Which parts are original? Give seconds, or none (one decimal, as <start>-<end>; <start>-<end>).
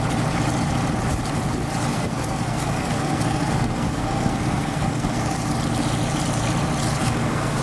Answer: 0.0-1.9; 5.5-7.0